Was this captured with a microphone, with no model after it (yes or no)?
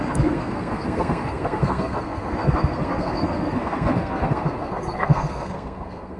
no